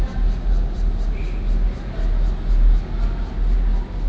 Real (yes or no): yes